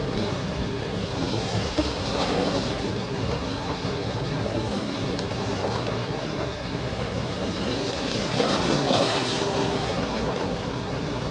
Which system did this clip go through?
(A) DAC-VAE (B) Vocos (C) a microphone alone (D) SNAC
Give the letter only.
D